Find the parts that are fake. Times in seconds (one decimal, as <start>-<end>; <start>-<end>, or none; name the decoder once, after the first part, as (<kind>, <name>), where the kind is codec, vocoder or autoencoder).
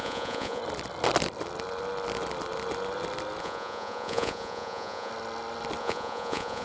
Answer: 0.0-0.6 (vocoder, Vocos); 3.4-5.1; 5.8-6.6